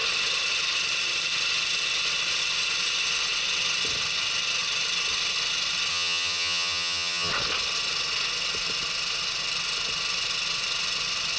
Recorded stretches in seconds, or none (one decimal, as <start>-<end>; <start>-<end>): 0.0-5.9; 7.3-11.4